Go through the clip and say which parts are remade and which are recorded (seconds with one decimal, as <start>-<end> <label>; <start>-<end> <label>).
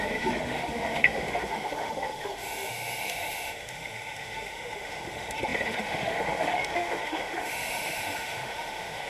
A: 0.0-9.1 remade